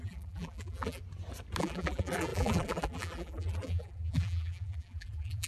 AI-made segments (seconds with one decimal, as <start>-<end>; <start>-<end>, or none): 0.0-1.0; 1.6-5.5